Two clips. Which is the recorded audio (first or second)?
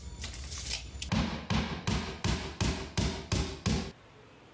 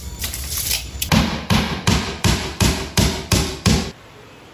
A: first